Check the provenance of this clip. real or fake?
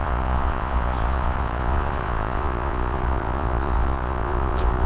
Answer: fake